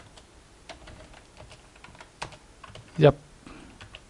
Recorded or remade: recorded